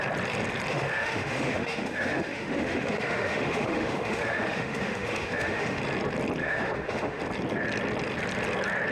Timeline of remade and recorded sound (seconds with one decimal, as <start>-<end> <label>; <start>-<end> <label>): 0.0-0.7 recorded; 0.7-5.8 remade; 5.8-6.4 recorded; 6.4-7.2 remade; 7.2-8.9 recorded